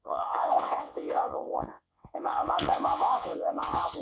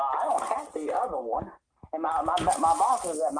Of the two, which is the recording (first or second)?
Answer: second